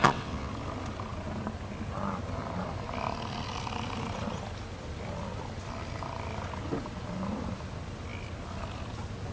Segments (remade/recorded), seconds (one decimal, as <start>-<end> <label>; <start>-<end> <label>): 0.0-0.5 remade; 0.5-9.3 recorded